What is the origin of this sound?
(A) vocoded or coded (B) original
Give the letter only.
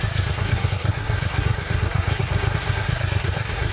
A